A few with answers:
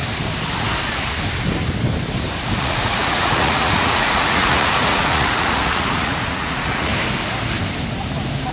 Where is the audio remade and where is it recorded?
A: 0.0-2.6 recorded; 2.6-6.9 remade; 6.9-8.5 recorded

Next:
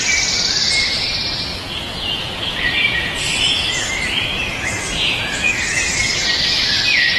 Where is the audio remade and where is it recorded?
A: 0.0-1.5 recorded; 1.5-3.9 remade; 3.9-4.3 recorded; 4.3-5.6 remade; 5.6-7.2 recorded

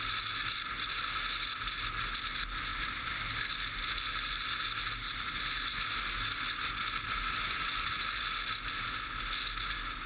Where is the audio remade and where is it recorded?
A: 0.0-10.1 recorded

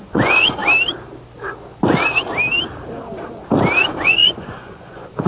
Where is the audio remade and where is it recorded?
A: 0.0-0.6 remade; 0.6-3.8 recorded; 3.8-5.3 remade

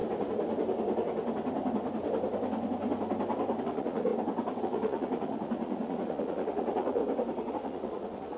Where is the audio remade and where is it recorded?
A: 0.0-3.6 recorded; 3.6-4.1 remade; 4.1-4.6 recorded; 4.6-7.0 remade; 7.0-7.5 recorded; 7.5-8.4 remade

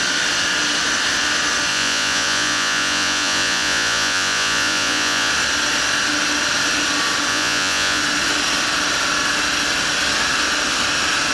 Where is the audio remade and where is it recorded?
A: 0.0-1.7 recorded; 1.7-5.3 remade; 5.3-7.3 recorded; 7.3-8.0 remade; 8.0-11.3 recorded

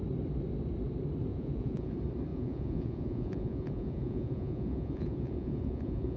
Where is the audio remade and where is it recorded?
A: 0.0-1.3 recorded; 1.3-1.9 remade; 1.9-2.3 recorded; 2.3-6.2 remade